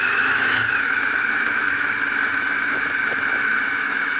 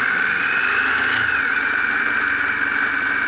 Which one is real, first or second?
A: second